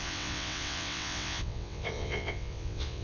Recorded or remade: remade